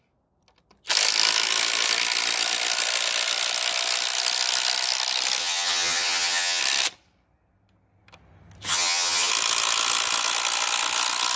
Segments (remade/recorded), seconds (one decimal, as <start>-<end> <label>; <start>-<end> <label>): 0.0-5.4 recorded; 5.4-6.6 remade; 6.6-8.7 recorded; 8.7-9.3 remade; 9.3-11.4 recorded